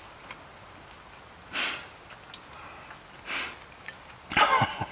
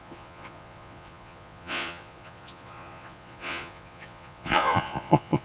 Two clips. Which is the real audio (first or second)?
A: first